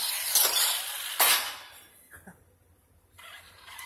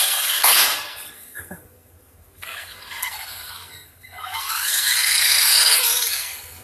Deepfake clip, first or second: second